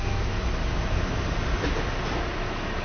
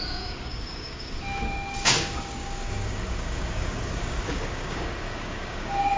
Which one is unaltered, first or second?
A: first